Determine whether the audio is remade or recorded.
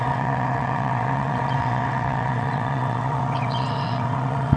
remade